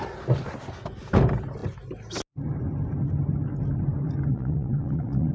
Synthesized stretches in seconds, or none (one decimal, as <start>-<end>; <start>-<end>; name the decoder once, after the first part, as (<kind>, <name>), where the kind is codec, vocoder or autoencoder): 4.3-5.3 (vocoder, Vocos)